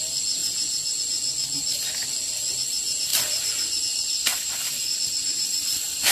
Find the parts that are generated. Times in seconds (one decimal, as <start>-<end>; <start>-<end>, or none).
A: 0.4-1.0